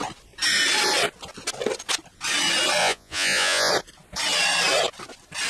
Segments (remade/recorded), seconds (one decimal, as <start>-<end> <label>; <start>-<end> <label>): 0.0-2.8 recorded; 2.8-3.7 remade; 3.7-5.5 recorded